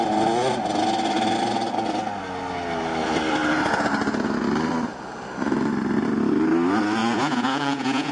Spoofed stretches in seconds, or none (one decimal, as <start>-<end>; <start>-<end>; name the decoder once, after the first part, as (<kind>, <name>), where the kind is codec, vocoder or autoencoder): 7.0-8.1 (vocoder, Vocos)